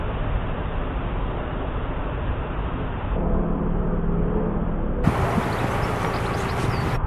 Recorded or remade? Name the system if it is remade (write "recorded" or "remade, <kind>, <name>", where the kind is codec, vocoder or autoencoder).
recorded